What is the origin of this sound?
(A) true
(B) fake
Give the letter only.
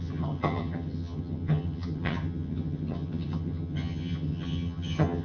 B